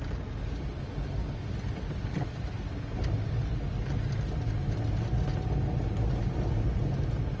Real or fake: real